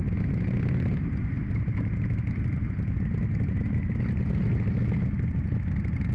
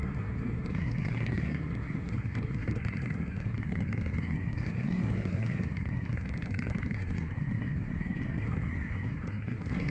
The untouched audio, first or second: first